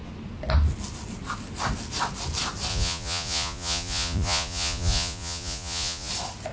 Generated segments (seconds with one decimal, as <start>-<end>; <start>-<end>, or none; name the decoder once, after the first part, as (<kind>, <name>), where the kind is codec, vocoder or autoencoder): 2.7-6.1 (vocoder, Vocos)